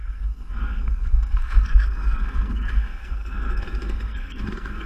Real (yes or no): no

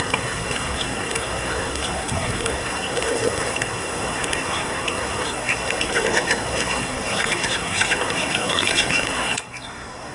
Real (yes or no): no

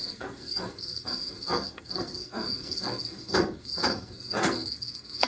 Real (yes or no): no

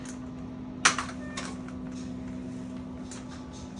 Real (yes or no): yes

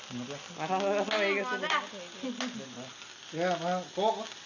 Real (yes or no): yes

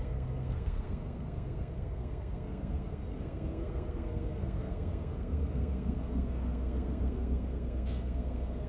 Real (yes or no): no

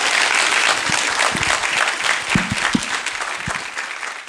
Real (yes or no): yes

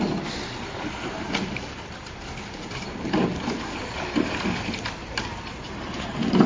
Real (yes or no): yes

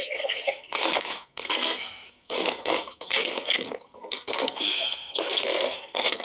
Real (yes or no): no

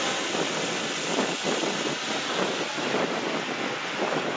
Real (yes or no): yes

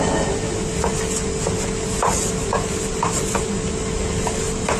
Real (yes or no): yes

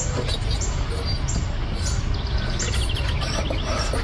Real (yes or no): yes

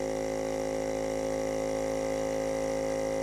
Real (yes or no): yes